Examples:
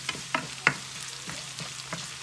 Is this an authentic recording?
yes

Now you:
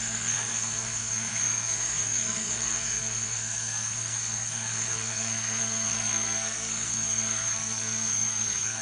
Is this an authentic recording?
no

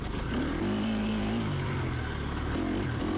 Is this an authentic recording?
yes